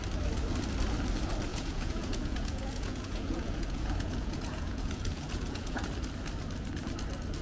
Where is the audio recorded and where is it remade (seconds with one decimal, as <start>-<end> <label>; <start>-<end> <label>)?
0.0-1.5 recorded; 1.5-5.9 remade; 5.9-7.4 recorded